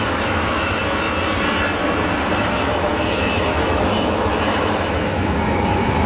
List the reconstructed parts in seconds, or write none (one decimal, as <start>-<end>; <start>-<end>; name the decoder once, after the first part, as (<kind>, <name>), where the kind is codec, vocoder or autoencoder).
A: 0.0-0.8 (autoencoder, DAC-VAE); 2.4-6.1

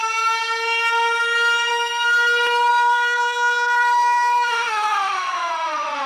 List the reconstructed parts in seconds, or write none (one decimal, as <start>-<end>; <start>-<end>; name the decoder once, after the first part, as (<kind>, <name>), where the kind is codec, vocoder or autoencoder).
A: 2.7-6.1 (autoencoder, DAC-VAE)